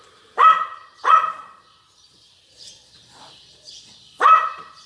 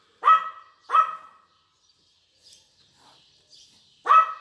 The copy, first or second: first